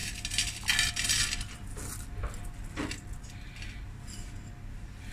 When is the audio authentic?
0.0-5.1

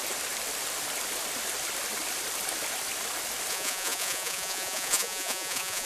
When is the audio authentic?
0.0-3.5

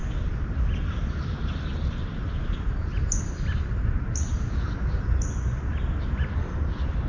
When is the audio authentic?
0.0-7.1

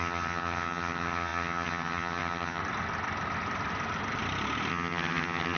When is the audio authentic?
2.6-4.7

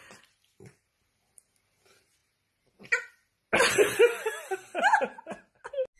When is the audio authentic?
0.0-6.0

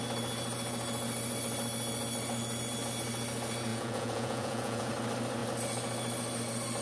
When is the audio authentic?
0.0-3.7; 4.9-6.8

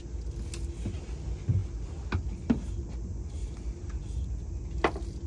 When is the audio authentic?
0.0-3.4; 4.0-5.3

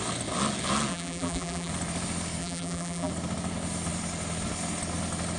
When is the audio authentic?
0.0-0.9; 1.7-2.4; 3.1-5.4